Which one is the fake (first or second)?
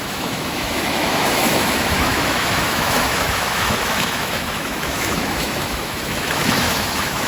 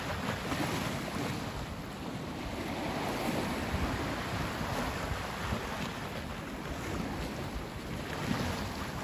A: first